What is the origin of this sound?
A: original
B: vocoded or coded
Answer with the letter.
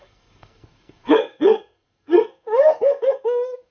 B